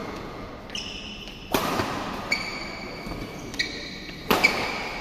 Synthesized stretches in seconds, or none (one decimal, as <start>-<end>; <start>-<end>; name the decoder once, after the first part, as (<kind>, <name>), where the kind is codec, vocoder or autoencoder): 0.0-0.5 (vocoder, Vocos)